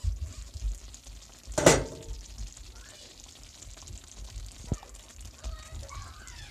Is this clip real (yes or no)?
yes